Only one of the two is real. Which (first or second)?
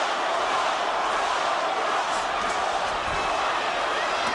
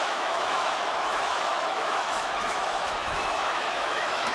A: first